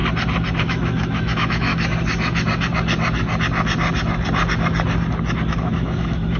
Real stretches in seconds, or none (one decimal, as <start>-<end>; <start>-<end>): 0.0-0.6; 1.7-5.5